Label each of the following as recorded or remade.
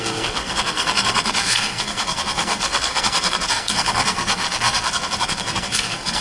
remade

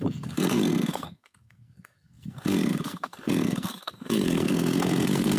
remade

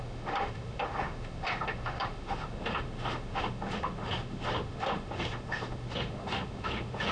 remade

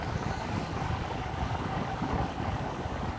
remade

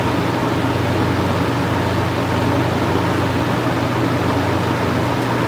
recorded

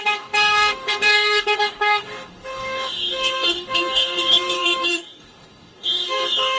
remade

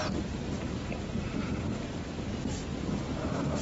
recorded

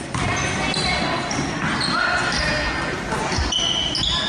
recorded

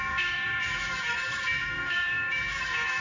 remade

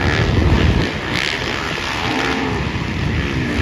recorded